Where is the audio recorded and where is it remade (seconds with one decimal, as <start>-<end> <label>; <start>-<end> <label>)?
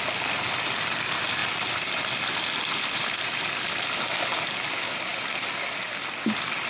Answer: 0.0-6.7 recorded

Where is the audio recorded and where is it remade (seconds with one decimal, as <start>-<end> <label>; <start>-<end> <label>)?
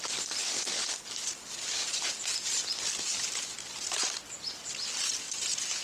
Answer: 0.0-5.8 recorded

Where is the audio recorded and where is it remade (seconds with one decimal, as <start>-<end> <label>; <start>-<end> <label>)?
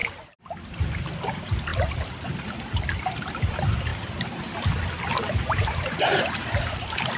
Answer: 0.0-0.8 recorded; 0.8-3.9 remade; 3.9-4.7 recorded; 4.7-7.2 remade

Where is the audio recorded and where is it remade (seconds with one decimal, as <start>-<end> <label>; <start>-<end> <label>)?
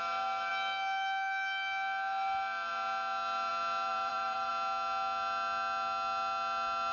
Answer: 0.0-3.9 recorded; 3.9-4.5 remade; 4.5-6.9 recorded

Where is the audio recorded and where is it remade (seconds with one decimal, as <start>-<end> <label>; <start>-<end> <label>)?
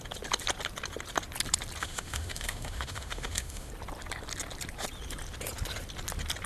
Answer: 0.0-1.8 recorded; 1.8-3.7 remade; 3.7-6.5 recorded